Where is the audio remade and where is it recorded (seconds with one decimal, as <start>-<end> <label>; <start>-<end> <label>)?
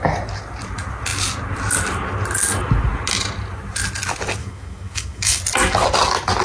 0.0-4.4 recorded; 4.4-5.4 remade; 5.4-6.4 recorded